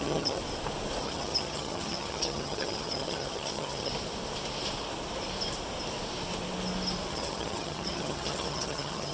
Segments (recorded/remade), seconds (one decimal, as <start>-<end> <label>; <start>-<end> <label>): 0.0-0.4 remade; 0.4-1.0 recorded; 1.0-3.9 remade; 3.9-7.1 recorded; 7.1-9.1 remade